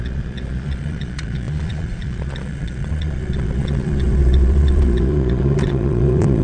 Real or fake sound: fake